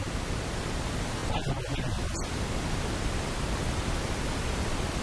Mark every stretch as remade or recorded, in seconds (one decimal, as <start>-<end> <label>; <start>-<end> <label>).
0.0-5.0 recorded